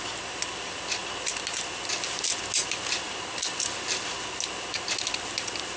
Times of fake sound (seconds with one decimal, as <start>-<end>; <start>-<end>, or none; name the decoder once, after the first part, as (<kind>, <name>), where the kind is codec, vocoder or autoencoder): none